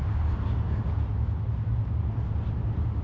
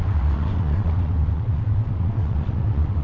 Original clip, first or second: first